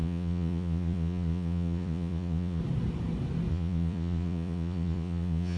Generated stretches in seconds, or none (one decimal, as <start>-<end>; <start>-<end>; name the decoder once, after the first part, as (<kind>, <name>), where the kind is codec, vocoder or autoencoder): 0.0-2.6 (vocoder, Vocos); 3.5-5.6